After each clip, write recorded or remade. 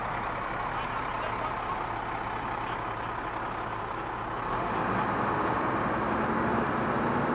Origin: recorded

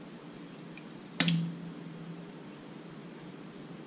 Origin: recorded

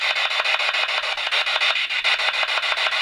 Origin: recorded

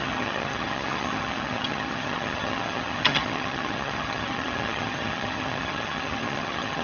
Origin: remade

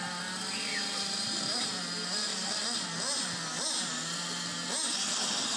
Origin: recorded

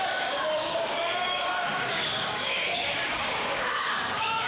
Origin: remade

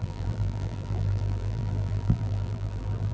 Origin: remade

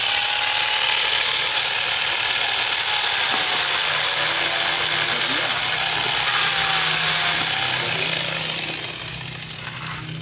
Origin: recorded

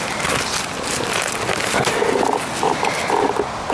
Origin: recorded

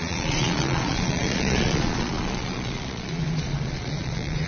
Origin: remade